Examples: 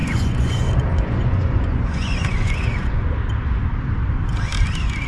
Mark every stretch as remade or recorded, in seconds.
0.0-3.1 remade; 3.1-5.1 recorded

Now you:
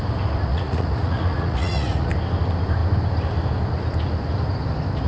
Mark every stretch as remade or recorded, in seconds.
0.0-0.5 recorded; 0.5-2.1 remade; 2.1-5.1 recorded

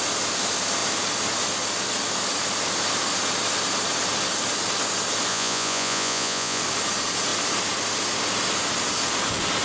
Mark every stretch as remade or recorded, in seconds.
0.0-5.3 recorded; 5.3-6.6 remade; 6.6-9.6 recorded

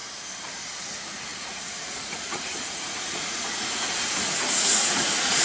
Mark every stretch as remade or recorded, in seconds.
0.0-0.8 recorded; 0.8-5.4 remade

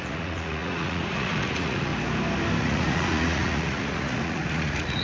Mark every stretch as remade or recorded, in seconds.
0.0-1.9 remade; 1.9-2.6 recorded; 2.6-5.0 remade

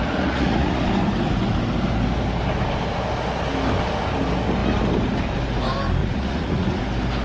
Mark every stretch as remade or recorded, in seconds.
0.0-0.8 remade; 0.8-6.0 recorded; 6.0-6.8 remade; 6.8-7.2 recorded

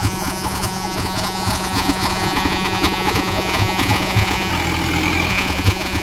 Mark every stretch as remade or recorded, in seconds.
0.0-4.5 remade; 4.5-5.3 recorded; 5.3-6.0 remade